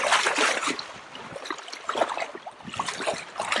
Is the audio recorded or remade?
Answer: recorded